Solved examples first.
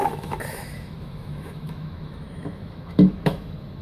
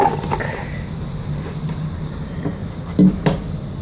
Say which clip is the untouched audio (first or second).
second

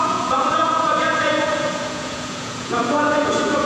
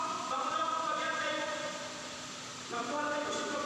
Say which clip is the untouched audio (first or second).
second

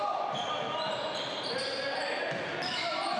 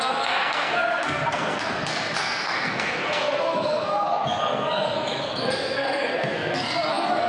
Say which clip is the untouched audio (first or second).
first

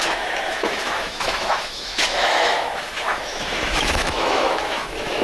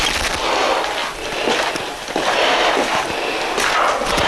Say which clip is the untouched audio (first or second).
second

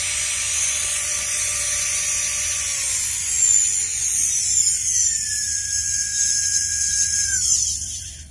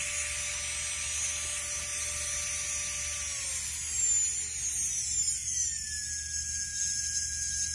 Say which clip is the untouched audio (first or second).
second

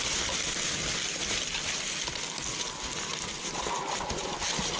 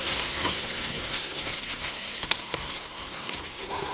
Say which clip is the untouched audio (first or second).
first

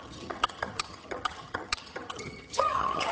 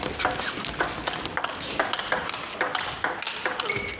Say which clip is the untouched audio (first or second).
second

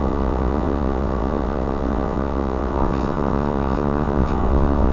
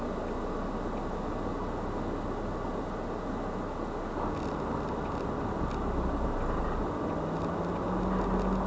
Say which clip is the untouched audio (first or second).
second